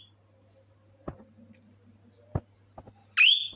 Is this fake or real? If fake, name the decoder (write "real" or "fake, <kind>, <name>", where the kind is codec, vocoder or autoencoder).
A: real